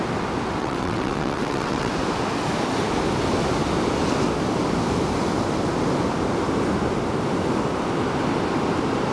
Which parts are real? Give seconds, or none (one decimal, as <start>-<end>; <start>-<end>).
0.0-0.6; 1.9-9.1